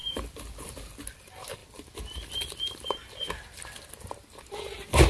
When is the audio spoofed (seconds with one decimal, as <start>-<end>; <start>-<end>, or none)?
none